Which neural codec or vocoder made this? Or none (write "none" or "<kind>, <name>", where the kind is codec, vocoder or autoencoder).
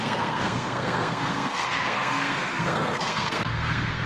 codec, SNAC